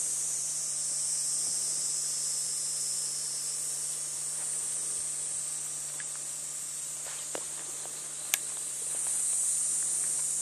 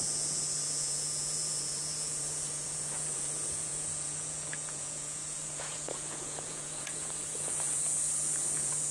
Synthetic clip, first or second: second